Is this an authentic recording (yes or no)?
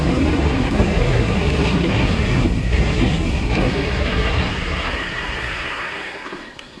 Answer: no